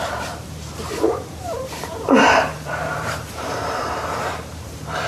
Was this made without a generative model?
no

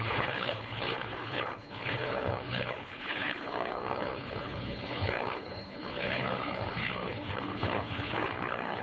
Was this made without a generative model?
no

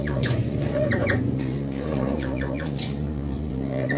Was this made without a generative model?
no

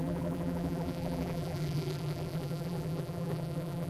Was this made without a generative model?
no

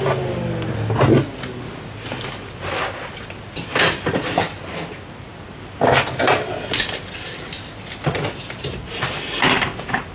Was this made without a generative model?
yes